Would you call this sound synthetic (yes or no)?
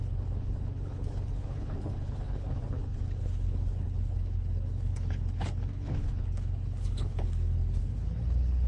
yes